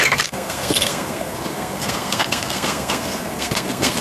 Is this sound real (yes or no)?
no